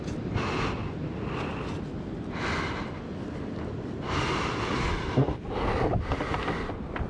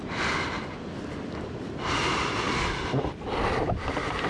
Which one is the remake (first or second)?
second